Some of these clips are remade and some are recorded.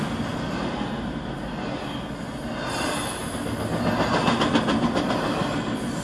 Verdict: recorded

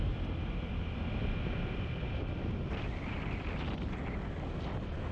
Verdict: recorded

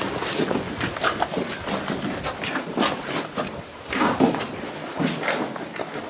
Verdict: recorded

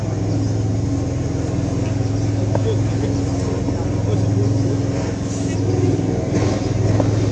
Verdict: recorded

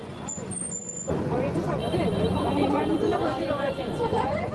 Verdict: remade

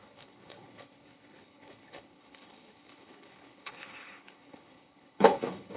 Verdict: remade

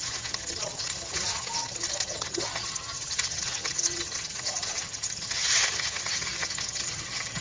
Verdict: remade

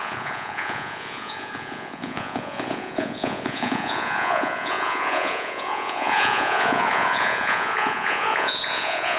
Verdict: remade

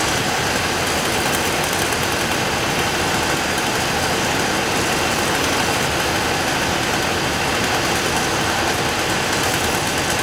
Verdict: recorded